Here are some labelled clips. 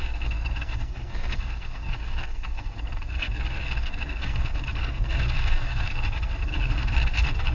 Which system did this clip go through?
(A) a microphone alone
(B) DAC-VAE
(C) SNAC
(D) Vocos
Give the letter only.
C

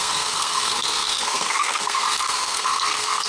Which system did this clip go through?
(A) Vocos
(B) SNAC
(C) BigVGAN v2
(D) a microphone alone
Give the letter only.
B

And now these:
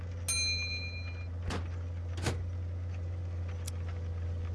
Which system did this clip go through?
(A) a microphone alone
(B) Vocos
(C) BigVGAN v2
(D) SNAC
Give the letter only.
A